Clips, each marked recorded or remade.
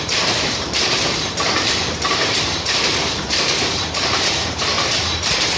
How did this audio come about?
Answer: remade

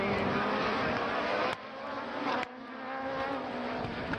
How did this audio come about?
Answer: recorded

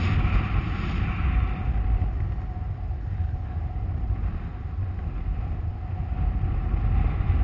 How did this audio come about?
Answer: recorded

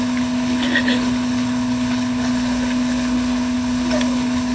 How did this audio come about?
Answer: remade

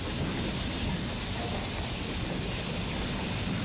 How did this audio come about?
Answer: recorded